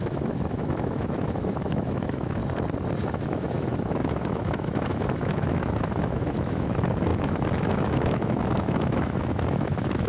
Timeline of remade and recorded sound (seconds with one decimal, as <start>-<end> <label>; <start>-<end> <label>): 0.0-2.4 remade; 2.4-3.0 recorded; 3.0-10.1 remade